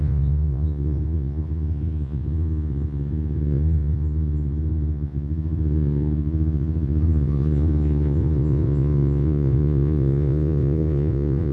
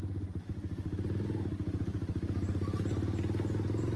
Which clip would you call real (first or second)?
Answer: second